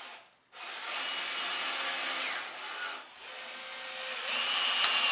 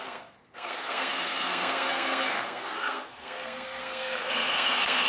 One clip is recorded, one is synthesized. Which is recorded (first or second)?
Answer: first